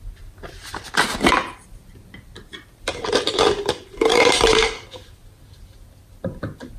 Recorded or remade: recorded